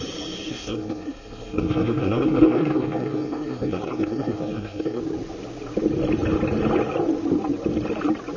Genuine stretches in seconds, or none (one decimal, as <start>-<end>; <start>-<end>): 0.0-0.5; 5.0-8.4